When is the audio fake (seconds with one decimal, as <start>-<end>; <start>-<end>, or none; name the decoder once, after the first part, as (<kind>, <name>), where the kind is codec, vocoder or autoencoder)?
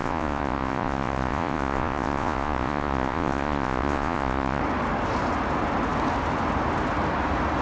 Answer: 0.0-4.6 (vocoder, Vocos)